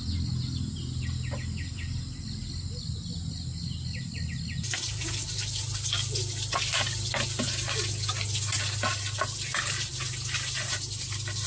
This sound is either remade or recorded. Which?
recorded